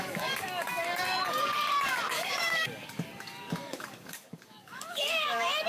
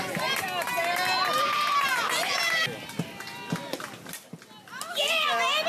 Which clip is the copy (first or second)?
first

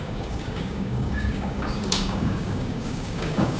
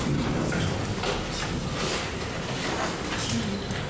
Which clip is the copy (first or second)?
first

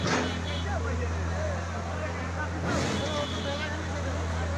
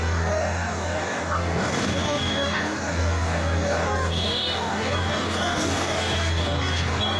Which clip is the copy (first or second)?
second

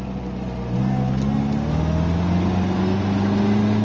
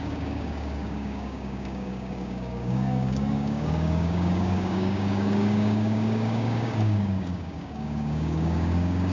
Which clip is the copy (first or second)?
second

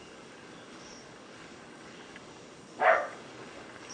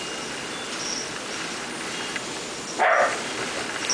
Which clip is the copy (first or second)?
first